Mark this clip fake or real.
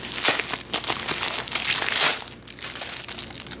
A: real